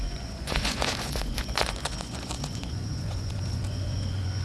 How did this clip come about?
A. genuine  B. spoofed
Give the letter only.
B